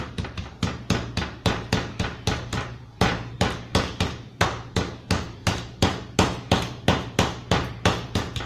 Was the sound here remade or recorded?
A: remade